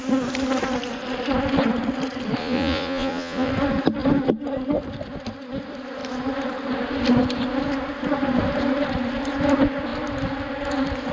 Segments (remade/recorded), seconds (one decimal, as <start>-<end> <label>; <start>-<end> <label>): 0.0-2.4 recorded; 2.4-3.5 remade; 3.5-11.1 recorded